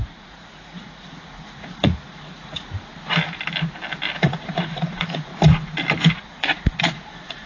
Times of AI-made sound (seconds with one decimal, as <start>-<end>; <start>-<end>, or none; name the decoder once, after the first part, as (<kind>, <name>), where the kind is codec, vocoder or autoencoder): 0.0-2.9 (vocoder, Vocos); 4.2-5.3; 6.1-7.5